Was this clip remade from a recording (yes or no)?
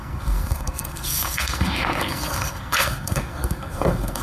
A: yes